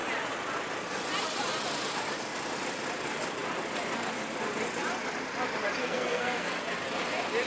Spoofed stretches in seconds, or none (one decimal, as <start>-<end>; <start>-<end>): 5.8-6.6